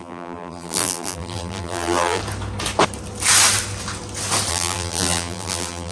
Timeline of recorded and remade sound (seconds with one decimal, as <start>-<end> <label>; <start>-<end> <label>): 0.0-2.2 remade; 2.2-4.5 recorded; 4.5-5.9 remade